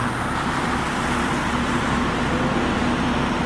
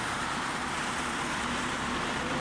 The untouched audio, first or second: first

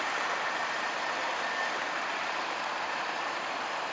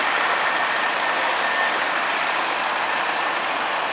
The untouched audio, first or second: second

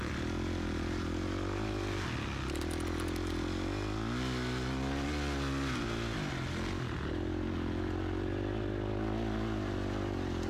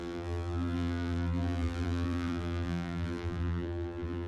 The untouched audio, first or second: first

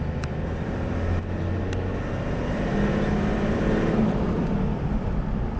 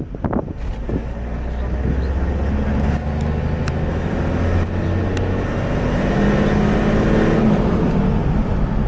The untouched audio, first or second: second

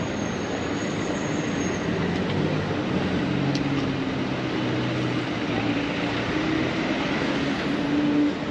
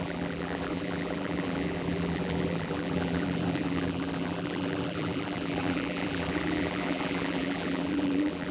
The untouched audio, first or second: first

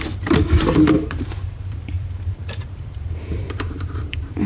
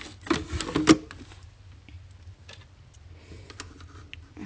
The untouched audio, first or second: second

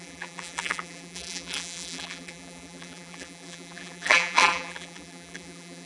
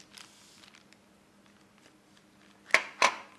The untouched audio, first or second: second